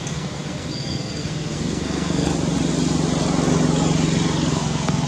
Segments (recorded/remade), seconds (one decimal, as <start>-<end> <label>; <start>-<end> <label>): 0.0-2.3 remade; 2.3-4.5 recorded; 4.5-5.1 remade